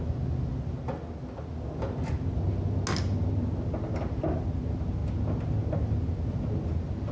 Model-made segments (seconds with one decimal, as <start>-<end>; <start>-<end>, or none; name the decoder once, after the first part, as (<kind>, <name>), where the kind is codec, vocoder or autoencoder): none